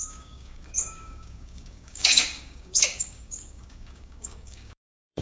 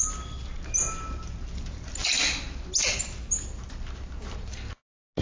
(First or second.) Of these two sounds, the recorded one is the second